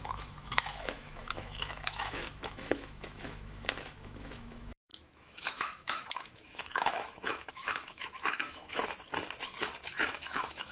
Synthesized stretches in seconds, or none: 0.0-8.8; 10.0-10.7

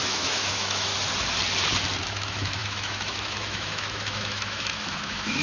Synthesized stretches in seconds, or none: 0.0-0.9; 2.1-5.4

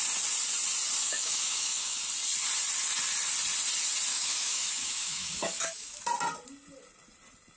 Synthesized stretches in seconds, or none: 1.0-2.0; 4.1-6.0

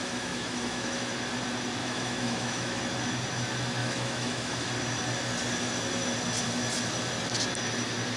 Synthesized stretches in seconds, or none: 0.0-1.1; 1.8-2.8; 3.8-4.7

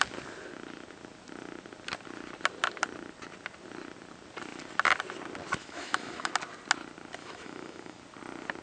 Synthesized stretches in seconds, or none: 5.6-6.3; 7.2-8.0

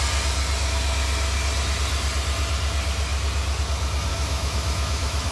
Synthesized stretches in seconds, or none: 4.1-5.3

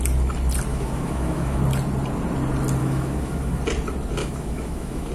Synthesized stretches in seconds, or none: 0.7-1.6; 2.8-3.6; 4.2-5.1